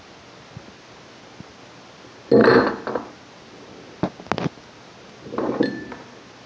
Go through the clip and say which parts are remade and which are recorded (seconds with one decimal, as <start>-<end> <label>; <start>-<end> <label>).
0.0-6.5 recorded